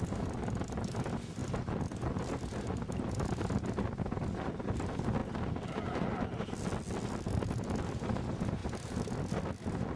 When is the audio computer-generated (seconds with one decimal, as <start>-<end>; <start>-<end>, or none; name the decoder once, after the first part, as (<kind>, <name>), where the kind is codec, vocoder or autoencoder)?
1.4-2.3 (vocoder, BigVGAN v2)